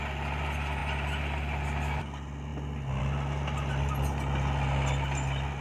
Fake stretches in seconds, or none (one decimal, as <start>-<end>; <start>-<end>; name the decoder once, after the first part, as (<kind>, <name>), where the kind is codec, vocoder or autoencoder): none